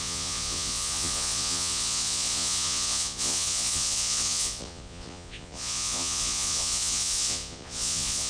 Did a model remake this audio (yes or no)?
yes